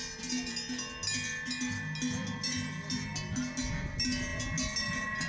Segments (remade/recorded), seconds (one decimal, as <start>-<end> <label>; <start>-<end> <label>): 0.0-5.3 recorded